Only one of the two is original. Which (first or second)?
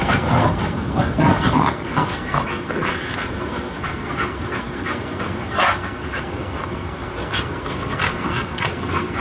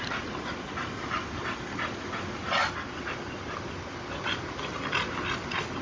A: second